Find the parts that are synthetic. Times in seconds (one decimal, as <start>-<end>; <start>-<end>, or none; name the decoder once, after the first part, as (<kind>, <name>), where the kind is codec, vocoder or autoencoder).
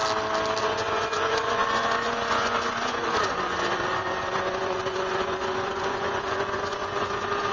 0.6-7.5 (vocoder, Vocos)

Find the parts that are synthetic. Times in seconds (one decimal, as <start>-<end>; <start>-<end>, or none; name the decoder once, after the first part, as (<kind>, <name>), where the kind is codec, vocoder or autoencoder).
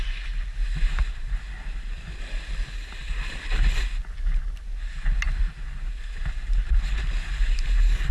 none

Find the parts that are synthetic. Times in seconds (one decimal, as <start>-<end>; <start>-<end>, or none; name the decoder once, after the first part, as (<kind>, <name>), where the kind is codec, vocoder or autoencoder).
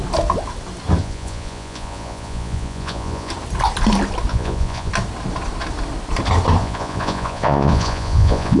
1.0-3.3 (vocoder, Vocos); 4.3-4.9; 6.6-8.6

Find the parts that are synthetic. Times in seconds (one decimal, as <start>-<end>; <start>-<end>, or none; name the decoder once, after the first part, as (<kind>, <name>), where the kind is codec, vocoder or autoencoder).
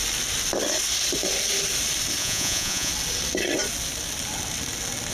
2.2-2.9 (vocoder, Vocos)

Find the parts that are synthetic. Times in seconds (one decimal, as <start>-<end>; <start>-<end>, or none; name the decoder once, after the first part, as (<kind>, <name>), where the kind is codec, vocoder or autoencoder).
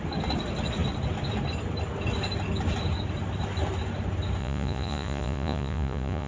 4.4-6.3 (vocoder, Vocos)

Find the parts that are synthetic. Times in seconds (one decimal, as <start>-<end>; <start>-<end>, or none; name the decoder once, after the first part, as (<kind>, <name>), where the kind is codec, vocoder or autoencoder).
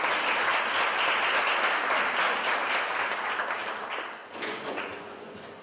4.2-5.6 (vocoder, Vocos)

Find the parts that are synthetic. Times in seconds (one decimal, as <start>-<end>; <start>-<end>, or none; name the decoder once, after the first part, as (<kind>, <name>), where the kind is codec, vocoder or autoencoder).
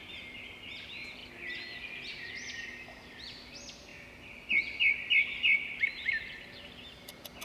none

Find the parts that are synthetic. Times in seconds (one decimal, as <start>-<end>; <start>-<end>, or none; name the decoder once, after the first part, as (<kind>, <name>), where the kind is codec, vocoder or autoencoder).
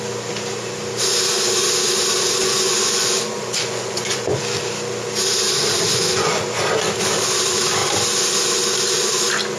2.4-4.4 (vocoder, Vocos); 5.9-6.4